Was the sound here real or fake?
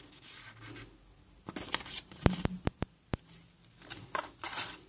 real